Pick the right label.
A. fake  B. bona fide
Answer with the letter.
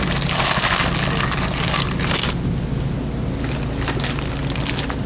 B